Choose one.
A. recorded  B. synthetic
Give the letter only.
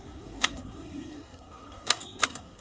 B